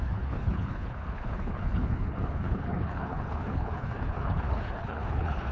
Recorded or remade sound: remade